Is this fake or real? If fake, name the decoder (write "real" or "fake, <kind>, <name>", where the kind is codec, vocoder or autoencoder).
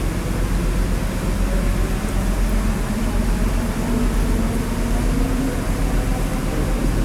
real